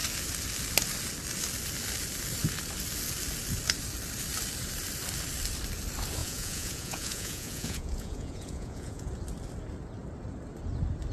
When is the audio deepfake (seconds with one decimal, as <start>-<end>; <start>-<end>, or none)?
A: 6.2-9.1